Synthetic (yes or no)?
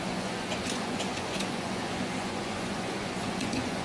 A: yes